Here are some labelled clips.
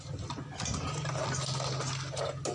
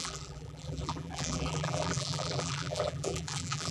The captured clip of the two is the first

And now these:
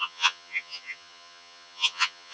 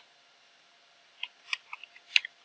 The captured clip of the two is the second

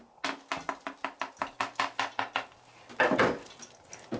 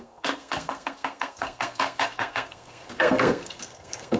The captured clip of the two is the first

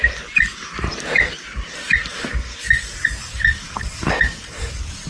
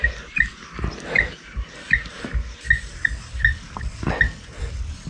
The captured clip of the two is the second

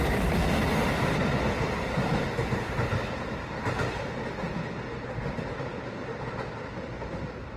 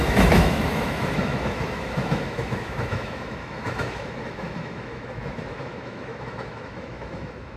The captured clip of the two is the first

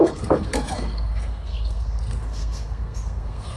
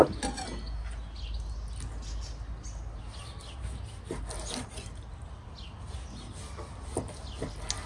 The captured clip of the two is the second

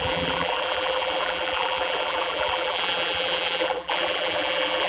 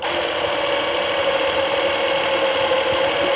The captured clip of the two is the second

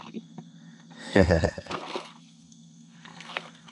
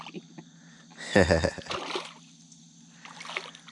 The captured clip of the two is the second